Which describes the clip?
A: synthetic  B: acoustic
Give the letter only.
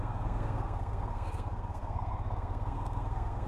A